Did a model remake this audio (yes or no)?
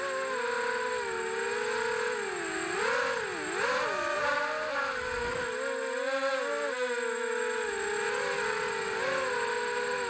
no